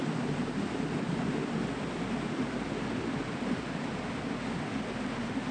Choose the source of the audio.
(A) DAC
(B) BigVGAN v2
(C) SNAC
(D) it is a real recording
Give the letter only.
D